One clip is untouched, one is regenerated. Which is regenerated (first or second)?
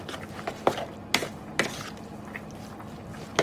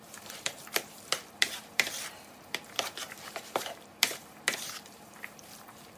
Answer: second